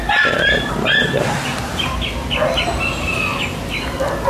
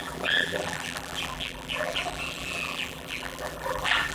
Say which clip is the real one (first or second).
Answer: first